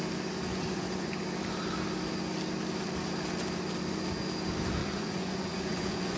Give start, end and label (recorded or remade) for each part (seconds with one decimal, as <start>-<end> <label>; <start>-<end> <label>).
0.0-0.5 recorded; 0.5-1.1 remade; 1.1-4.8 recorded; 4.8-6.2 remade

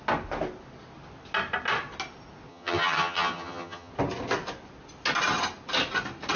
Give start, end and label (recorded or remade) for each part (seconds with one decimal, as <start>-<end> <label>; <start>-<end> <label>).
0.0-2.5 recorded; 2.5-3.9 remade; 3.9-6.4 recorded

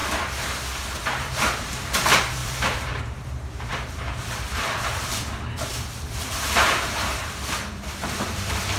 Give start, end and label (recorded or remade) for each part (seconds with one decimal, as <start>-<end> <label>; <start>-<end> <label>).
0.0-1.1 recorded; 1.1-8.8 remade

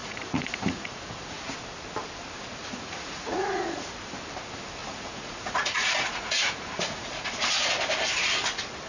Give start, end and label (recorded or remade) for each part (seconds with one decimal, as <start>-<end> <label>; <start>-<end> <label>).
0.0-1.5 remade; 1.5-2.6 recorded; 2.6-4.0 remade; 4.0-4.8 recorded; 4.8-7.3 remade; 7.3-8.9 recorded